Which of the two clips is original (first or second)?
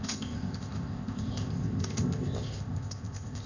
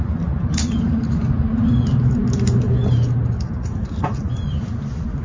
second